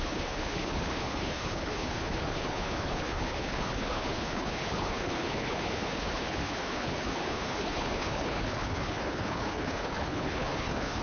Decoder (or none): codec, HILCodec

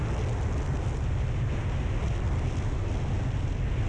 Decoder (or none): none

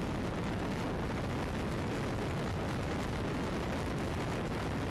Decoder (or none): none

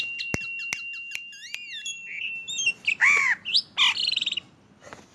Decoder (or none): none